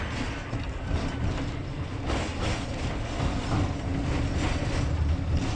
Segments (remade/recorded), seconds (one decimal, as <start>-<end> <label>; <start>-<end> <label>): 0.0-5.6 recorded

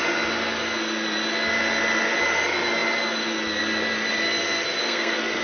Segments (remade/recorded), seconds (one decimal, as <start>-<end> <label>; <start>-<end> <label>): 0.0-4.8 recorded; 4.8-5.4 remade

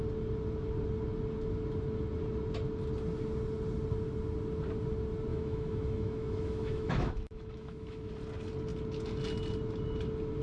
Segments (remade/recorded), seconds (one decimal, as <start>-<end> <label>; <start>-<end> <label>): 0.0-5.3 recorded; 5.3-8.1 remade; 8.1-10.4 recorded

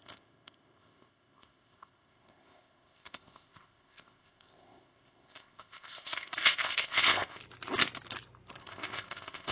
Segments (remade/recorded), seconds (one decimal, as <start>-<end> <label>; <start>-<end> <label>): 0.0-7.4 remade; 7.4-8.6 recorded; 8.6-9.5 remade

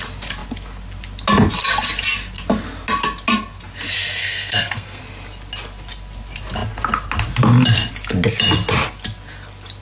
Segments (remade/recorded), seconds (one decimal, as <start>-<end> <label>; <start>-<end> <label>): 0.0-4.2 recorded; 4.2-5.0 remade; 5.0-9.8 recorded

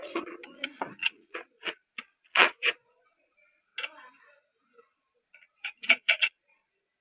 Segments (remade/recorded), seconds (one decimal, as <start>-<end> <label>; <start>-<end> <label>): 0.0-3.7 remade; 3.7-4.8 recorded; 4.8-7.0 remade